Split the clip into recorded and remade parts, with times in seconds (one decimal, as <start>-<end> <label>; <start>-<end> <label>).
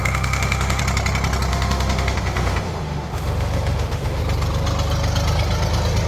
0.0-0.8 remade; 0.8-1.5 recorded; 1.5-4.2 remade; 4.2-6.1 recorded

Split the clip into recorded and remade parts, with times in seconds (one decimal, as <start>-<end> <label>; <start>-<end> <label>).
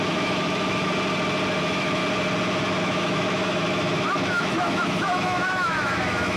0.0-0.9 remade; 0.9-1.6 recorded; 1.6-2.0 remade; 2.0-2.8 recorded; 2.8-6.4 remade